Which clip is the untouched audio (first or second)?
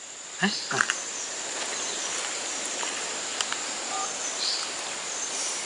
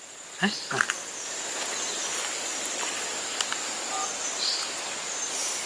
second